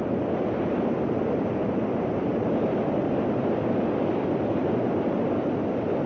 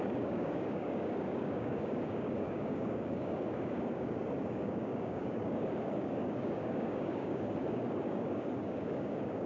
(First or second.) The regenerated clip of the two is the second